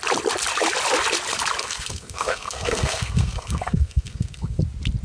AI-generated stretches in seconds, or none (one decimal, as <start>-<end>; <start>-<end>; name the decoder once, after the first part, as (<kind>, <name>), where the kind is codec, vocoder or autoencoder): 1.6-4.6 (codec, SNAC)